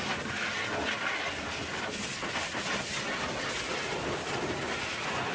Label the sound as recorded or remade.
recorded